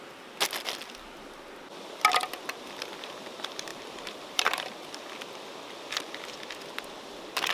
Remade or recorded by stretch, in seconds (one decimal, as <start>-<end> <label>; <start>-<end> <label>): 0.0-3.7 recorded; 3.7-4.8 remade; 4.8-7.5 recorded